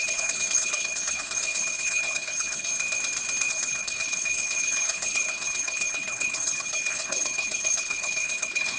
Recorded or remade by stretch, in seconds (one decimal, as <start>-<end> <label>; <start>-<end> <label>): 0.0-2.7 remade; 2.7-3.5 recorded; 3.5-8.8 remade